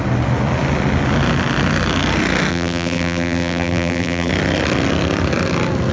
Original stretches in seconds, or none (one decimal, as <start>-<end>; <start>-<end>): 0.0-2.5; 4.3-5.9

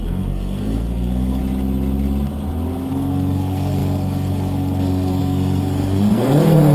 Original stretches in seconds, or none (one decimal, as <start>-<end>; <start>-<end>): 1.4-2.9

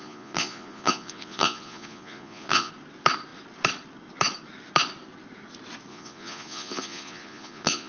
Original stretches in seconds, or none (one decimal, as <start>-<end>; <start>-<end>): 2.7-5.9

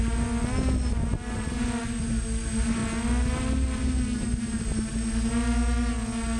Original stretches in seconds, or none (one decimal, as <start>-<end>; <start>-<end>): 0.0-6.4